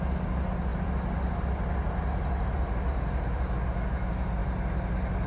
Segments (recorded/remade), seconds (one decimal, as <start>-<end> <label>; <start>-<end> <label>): 0.0-5.3 recorded